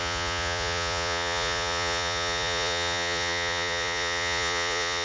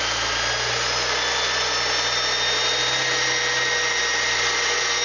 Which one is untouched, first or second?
second